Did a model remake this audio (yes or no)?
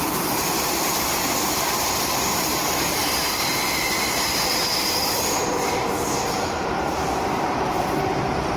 yes